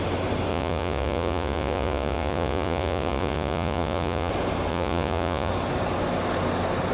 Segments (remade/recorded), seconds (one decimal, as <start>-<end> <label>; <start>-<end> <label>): 0.0-0.5 recorded; 0.5-4.3 remade; 4.3-4.7 recorded; 4.7-5.5 remade; 5.5-6.9 recorded